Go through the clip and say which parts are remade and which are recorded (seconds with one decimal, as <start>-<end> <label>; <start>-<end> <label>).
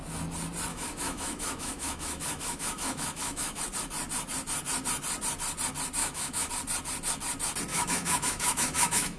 0.0-0.7 recorded; 0.7-3.6 remade; 3.6-6.0 recorded; 6.0-6.5 remade; 6.5-7.7 recorded; 7.7-9.2 remade